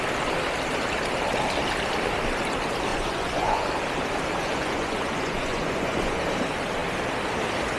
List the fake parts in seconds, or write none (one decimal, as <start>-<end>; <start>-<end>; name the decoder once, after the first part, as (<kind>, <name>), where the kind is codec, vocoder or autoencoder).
2.9-3.7 (vocoder, Vocos); 4.4-6.2